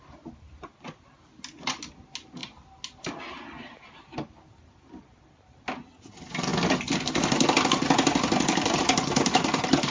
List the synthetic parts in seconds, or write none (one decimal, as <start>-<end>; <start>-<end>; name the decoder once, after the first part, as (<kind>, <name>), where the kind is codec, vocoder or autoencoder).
none